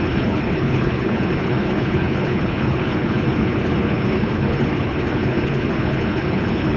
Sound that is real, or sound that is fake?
fake